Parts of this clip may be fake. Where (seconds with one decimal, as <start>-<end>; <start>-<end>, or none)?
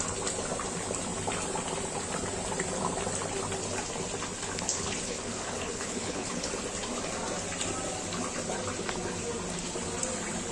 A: 4.7-6.5